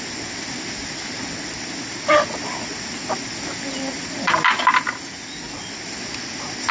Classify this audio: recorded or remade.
recorded